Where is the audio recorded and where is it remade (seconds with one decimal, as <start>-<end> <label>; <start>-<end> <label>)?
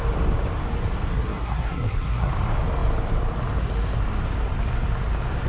0.0-1.1 recorded; 1.1-2.3 remade; 2.3-5.5 recorded